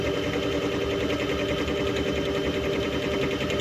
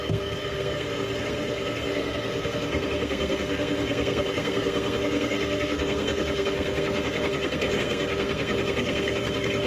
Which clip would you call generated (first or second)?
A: second